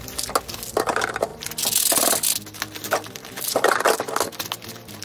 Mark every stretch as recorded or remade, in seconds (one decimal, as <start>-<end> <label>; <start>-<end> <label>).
0.0-5.0 recorded